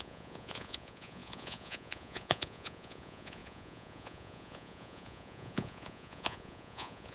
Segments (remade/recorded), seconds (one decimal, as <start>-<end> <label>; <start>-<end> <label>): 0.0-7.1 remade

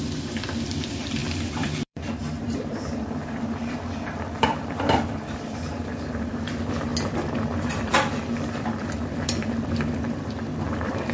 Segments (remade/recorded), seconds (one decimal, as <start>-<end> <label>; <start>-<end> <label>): 0.0-11.1 remade

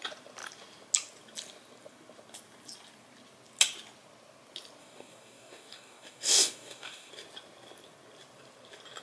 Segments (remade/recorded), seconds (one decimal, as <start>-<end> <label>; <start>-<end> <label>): 0.0-4.8 recorded; 4.8-7.1 remade; 7.1-9.0 recorded

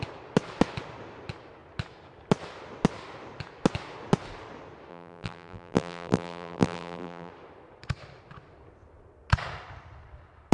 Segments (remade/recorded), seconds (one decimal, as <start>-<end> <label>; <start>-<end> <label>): 0.0-4.9 recorded; 4.9-7.3 remade; 7.3-10.5 recorded

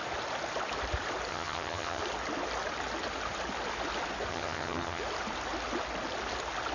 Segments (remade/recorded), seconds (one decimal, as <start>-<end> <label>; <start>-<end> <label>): 0.0-1.3 recorded; 1.3-2.0 remade; 2.0-4.3 recorded; 4.3-5.0 remade; 5.0-6.7 recorded